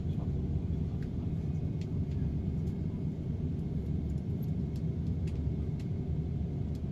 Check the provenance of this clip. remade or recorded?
recorded